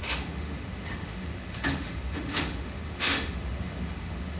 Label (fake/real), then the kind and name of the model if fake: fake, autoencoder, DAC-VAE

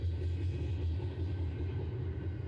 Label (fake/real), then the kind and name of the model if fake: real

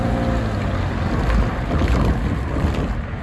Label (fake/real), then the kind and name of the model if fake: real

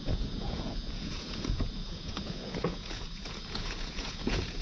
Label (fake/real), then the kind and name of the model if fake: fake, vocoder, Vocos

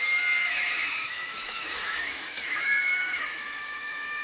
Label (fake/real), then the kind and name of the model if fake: fake, autoencoder, DAC-VAE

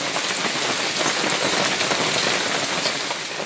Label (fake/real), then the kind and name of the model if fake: real